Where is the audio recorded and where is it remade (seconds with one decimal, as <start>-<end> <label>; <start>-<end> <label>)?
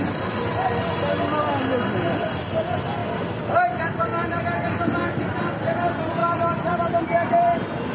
0.0-6.2 recorded; 6.2-7.9 remade